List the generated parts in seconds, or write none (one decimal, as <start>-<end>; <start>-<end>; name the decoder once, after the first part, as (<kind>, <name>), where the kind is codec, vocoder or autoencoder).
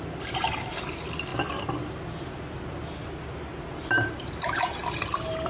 none